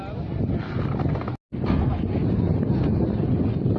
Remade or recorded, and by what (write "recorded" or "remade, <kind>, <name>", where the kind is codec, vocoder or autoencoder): recorded